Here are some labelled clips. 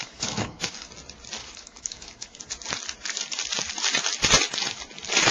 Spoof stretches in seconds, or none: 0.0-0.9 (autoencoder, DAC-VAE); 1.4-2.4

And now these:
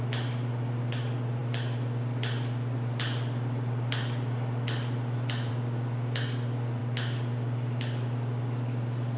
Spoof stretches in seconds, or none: 1.4-5.5 (vocoder, BigVGAN v2); 6.8-9.2

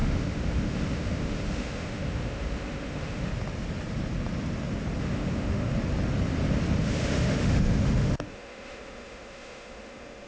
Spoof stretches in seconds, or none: 0.0-3.3 (autoencoder, DAC-VAE); 5.0-5.7; 6.8-10.3

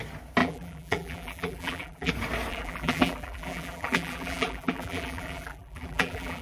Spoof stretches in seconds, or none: 0.4-2.1 (vocoder, BigVGAN v2); 2.5-6.4

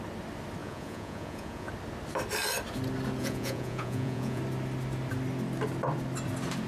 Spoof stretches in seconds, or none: 0.6-1.7 (vocoder, Vocos); 3.2-4.4

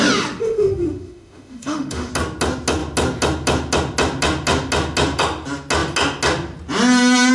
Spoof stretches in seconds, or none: 0.4-2.1 (autoencoder, DAC-VAE)